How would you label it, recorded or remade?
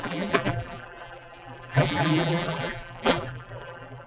remade